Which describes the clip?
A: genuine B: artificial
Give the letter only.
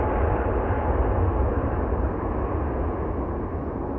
A